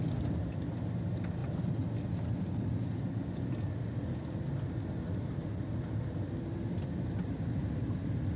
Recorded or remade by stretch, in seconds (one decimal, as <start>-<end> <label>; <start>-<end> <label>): 0.0-8.4 recorded

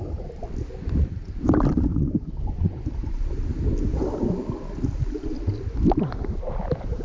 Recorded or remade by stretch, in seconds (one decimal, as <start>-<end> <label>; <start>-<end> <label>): 0.0-1.9 recorded; 1.9-2.9 remade; 2.9-7.0 recorded

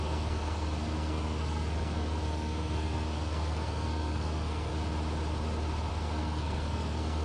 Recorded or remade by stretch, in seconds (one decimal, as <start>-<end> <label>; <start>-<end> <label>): 0.0-4.7 remade; 4.7-5.9 recorded; 5.9-7.2 remade

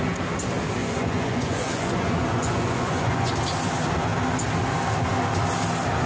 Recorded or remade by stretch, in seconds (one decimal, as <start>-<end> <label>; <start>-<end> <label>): 0.0-0.8 recorded; 0.8-3.3 remade; 3.3-6.1 recorded